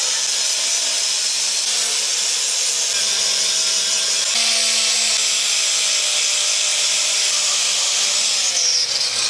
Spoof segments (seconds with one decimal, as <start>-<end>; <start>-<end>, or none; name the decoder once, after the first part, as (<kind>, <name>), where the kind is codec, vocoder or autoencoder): 6.7-8.0 (vocoder, BigVGAN v2)